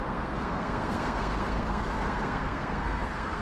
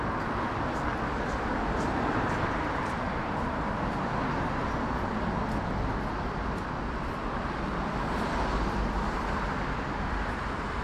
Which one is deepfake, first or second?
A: first